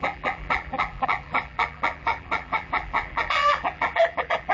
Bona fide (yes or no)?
no